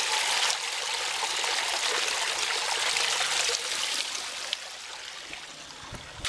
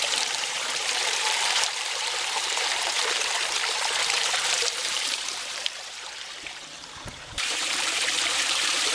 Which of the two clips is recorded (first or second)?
first